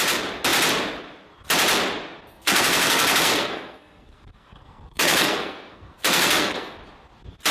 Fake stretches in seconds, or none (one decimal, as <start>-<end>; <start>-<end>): 2.3-6.8